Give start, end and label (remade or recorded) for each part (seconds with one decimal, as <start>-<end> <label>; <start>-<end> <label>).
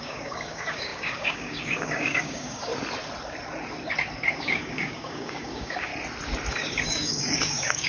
0.0-2.7 remade; 2.7-4.3 recorded; 4.3-5.9 remade; 5.9-6.5 recorded; 6.5-7.9 remade